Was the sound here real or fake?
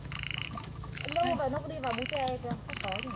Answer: fake